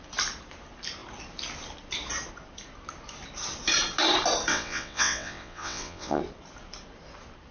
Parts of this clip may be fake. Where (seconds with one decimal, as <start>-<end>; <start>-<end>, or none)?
4.5-6.2